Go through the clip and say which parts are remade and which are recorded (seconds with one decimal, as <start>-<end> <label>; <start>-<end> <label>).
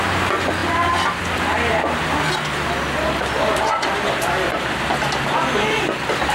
0.0-0.6 recorded; 0.6-1.7 remade; 1.7-3.7 recorded; 3.7-5.7 remade; 5.7-6.3 recorded